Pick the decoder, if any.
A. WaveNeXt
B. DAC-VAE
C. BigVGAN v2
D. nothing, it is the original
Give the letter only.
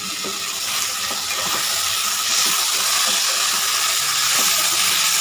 D